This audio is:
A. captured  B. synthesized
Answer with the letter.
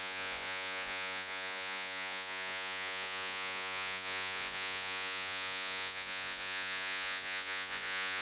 B